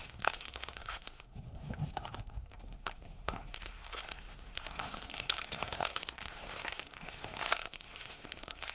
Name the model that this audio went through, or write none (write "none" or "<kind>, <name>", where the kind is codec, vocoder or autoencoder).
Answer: codec, SNAC